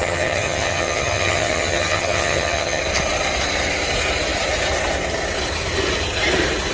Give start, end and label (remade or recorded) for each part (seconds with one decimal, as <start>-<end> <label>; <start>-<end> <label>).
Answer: 0.0-2.8 remade; 2.8-6.7 recorded